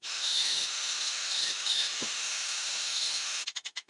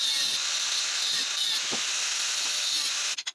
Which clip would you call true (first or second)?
second